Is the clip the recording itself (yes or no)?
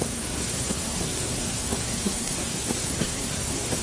no